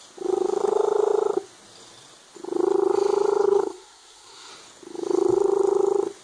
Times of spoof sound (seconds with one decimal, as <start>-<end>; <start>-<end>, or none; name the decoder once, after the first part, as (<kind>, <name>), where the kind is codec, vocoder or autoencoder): 3.4-4.5 (codec, SNAC)